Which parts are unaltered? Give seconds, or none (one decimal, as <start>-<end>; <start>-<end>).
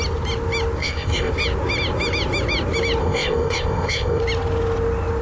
0.0-0.8; 1.3-3.0; 4.2-5.2